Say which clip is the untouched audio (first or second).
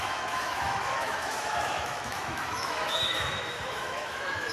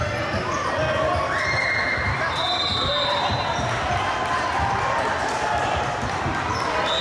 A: second